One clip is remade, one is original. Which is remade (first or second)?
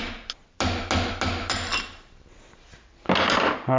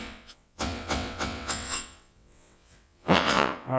second